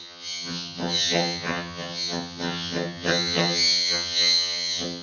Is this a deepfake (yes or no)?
yes